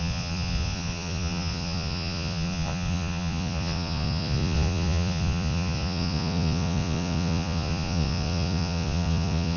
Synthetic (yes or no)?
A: yes